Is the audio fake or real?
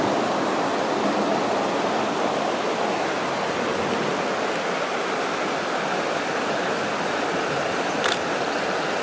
real